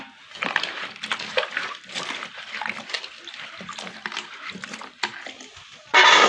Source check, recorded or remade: recorded